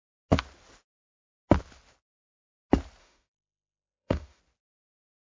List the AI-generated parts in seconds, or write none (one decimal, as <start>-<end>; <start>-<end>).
3.0-4.4